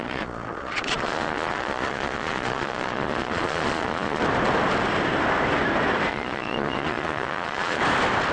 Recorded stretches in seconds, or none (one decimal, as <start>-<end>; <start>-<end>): 4.2-6.1; 7.8-8.3